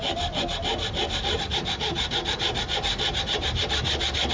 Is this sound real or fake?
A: real